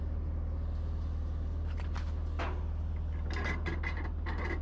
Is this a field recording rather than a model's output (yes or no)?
yes